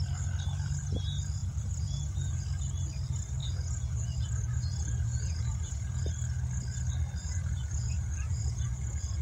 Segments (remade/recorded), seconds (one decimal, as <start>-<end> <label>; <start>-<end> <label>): 0.0-1.4 recorded; 1.4-2.4 remade; 2.4-3.4 recorded; 3.4-6.0 remade; 6.0-7.2 recorded; 7.2-9.2 remade